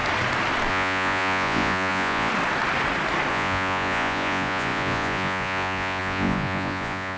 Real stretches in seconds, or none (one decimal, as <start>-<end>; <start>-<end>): 0.0-0.7; 2.3-3.3